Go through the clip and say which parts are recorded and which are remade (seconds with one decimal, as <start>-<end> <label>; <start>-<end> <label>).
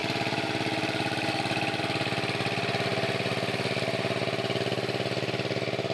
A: 0.0-1.8 remade; 1.8-5.9 recorded